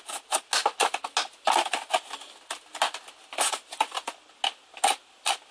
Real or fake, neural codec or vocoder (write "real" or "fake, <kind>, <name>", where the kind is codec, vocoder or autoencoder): real